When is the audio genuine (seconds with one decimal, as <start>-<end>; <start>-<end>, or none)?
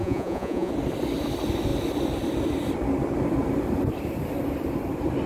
0.7-5.3